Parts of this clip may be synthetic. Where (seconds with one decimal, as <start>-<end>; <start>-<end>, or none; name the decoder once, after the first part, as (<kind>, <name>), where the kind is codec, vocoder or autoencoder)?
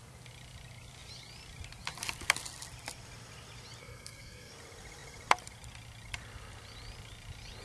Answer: 3.8-4.5 (codec, SNAC)